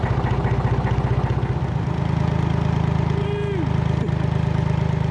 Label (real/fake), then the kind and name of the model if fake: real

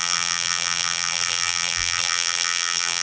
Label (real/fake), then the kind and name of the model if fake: fake, vocoder, BigVGAN v2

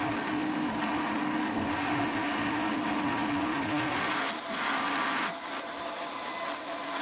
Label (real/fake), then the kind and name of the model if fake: real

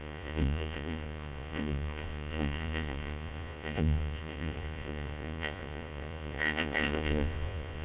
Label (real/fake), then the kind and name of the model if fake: fake, vocoder, Vocos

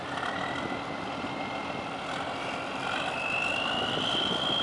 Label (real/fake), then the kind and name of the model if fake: real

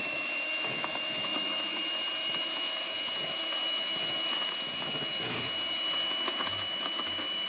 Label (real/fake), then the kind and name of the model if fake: fake, autoencoder, DAC-VAE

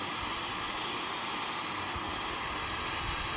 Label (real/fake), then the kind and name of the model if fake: real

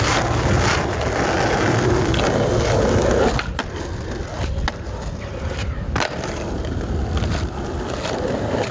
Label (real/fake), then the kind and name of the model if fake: real